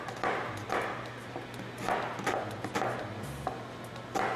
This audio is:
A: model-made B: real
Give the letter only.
B